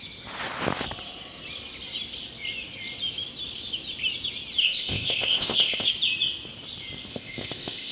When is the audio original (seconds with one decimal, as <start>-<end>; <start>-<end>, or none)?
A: 0.0-4.6; 5.9-7.1